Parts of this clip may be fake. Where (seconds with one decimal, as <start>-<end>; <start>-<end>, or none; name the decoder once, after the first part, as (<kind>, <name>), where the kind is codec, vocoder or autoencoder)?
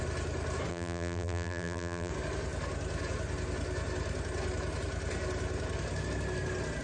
0.7-2.1 (vocoder, BigVGAN v2)